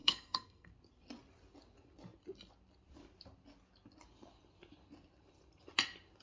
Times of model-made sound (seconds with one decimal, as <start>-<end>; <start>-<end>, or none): 0.0-0.7